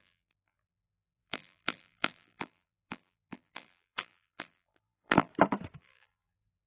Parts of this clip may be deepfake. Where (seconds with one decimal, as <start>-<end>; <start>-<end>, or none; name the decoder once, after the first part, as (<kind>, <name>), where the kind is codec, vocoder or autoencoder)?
0.0-5.3 (vocoder, BigVGAN v2); 5.8-6.7

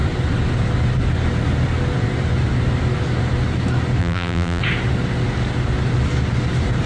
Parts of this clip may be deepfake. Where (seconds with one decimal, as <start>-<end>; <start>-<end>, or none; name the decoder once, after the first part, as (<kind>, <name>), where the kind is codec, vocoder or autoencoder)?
4.0-4.6 (vocoder, BigVGAN v2)

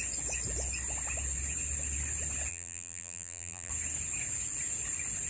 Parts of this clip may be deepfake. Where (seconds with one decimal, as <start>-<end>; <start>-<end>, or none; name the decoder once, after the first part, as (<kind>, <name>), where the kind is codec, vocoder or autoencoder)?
2.5-3.7 (vocoder, BigVGAN v2)

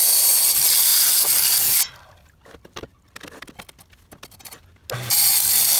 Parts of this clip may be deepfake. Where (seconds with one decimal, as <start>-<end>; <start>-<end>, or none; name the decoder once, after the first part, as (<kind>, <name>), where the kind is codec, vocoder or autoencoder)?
none

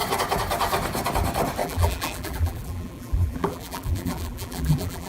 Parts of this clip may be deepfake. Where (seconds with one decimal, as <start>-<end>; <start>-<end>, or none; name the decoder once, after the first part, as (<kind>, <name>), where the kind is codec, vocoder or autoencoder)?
1.6-5.1 (vocoder, BigVGAN v2)